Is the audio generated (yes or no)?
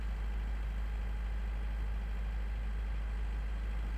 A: no